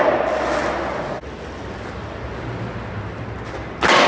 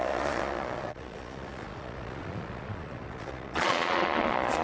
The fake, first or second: second